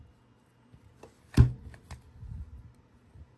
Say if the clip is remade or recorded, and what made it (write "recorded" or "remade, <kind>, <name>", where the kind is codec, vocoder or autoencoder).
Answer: recorded